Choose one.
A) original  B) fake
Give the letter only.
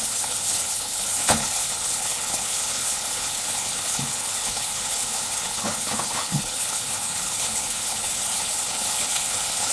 B